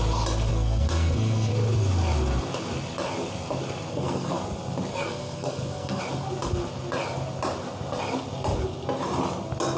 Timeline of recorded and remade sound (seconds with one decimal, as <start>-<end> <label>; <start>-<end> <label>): 0.0-0.5 recorded; 0.5-1.5 remade; 1.5-3.9 recorded; 3.9-4.4 remade; 4.4-4.9 recorded; 4.9-6.0 remade; 6.0-9.8 recorded